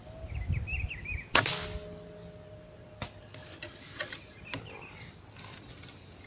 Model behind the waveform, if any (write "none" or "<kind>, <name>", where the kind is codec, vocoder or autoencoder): none